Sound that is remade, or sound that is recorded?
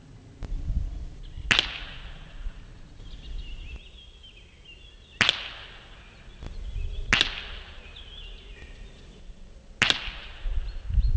recorded